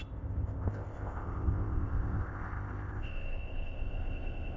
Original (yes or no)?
no